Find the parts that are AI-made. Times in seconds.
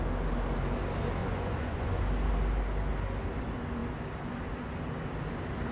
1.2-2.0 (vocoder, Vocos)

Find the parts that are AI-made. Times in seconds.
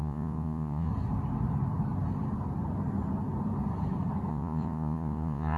0.0-0.9 (vocoder, Vocos); 4.3-5.6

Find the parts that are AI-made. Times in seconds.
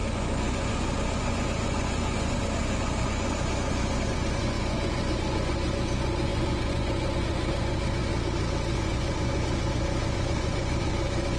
0.0-8.1 (vocoder, Vocos); 8.7-11.4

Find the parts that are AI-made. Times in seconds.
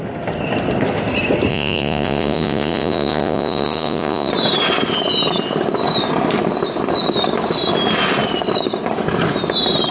1.5-4.3 (vocoder, Vocos)